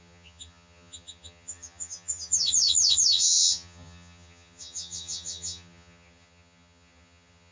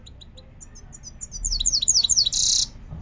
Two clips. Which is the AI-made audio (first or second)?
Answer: first